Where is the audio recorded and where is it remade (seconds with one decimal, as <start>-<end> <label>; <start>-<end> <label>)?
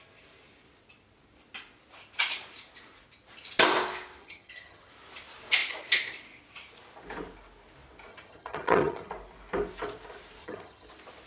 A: 0.0-4.2 recorded; 4.2-4.9 remade; 4.9-8.1 recorded; 8.1-9.1 remade; 9.1-10.4 recorded; 10.4-10.9 remade; 10.9-11.3 recorded